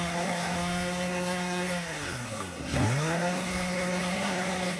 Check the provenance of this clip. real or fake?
fake